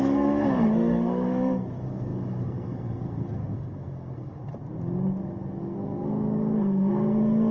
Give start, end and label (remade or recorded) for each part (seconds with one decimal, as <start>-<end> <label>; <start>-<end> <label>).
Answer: 0.0-4.4 remade; 4.4-5.6 recorded; 5.6-7.5 remade